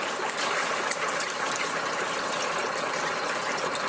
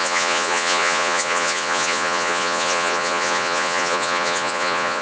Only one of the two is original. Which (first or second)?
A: first